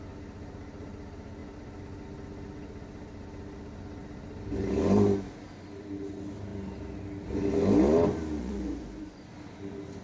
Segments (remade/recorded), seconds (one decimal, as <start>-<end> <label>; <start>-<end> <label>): 0.0-8.4 recorded; 8.4-9.3 remade; 9.3-10.0 recorded